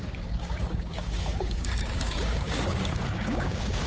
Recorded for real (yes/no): no